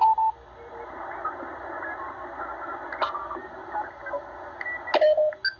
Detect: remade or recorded recorded